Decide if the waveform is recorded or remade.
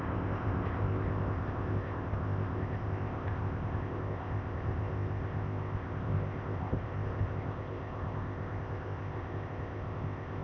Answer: remade